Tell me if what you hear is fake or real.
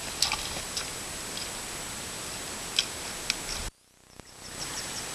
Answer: real